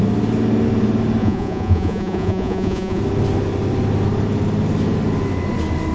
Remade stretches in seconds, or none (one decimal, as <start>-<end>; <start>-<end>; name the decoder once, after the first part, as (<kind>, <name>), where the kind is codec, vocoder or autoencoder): 1.2-3.0 (vocoder, Vocos)